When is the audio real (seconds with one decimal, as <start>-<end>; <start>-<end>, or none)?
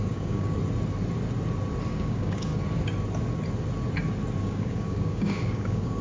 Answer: 0.6-1.9; 2.5-4.4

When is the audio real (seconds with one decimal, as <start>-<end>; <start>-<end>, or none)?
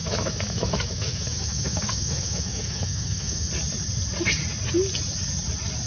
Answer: 3.5-5.9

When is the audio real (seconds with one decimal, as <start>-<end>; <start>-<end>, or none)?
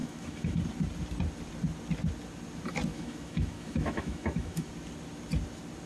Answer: 0.6-2.9; 4.7-5.9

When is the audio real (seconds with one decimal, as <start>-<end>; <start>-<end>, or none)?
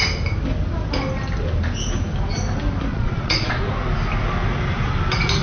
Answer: 0.0-2.9; 3.6-5.4